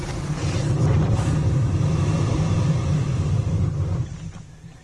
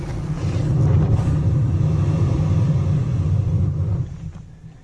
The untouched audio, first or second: second